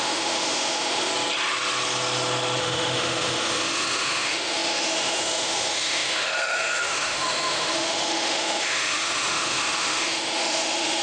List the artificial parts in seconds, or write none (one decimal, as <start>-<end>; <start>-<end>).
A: 0.0-1.1; 2.6-11.0